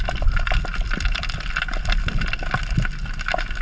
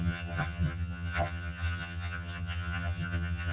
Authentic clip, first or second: first